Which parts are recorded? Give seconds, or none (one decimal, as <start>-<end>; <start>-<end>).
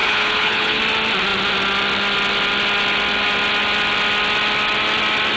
0.8-5.4